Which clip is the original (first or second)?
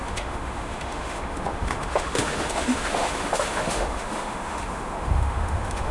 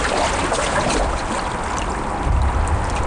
second